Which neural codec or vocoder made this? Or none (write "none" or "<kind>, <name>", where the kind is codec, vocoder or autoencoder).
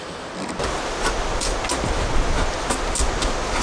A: none